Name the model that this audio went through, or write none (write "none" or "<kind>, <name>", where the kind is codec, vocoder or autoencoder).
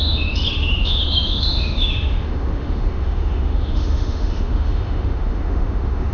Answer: autoencoder, DAC-VAE